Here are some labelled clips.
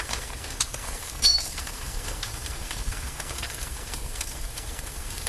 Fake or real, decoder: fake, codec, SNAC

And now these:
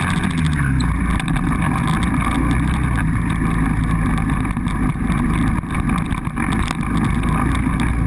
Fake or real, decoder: real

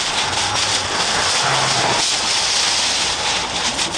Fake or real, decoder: real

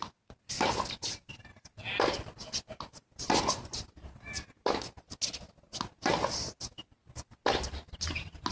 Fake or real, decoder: real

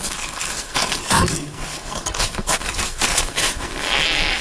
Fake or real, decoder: fake, codec, SNAC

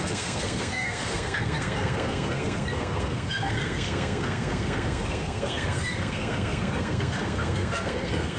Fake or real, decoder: fake, codec, SNAC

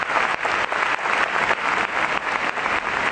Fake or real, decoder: real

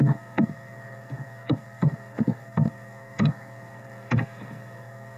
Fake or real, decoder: fake, codec, SNAC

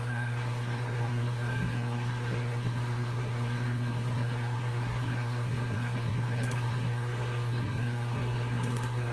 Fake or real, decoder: fake, codec, SNAC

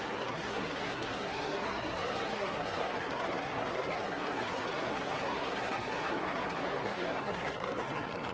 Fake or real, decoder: fake, codec, SNAC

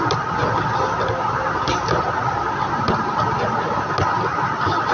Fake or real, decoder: real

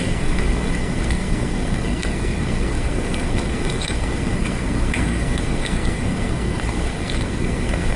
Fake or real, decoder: fake, codec, SNAC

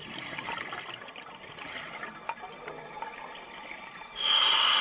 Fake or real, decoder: real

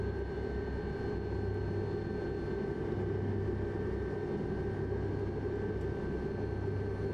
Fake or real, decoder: real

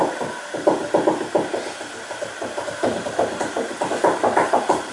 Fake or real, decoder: real